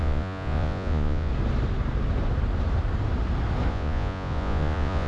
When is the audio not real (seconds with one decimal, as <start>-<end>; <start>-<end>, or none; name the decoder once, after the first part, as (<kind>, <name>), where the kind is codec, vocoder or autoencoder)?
0.0-1.3 (vocoder, Vocos); 3.7-5.1